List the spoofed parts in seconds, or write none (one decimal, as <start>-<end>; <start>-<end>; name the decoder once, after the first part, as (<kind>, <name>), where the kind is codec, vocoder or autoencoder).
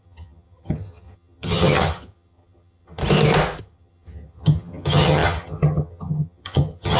0.0-3.0 (vocoder, HiFi-GAN); 3.6-7.0